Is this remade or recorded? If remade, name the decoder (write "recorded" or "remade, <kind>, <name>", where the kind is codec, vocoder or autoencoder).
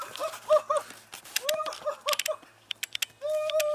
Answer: recorded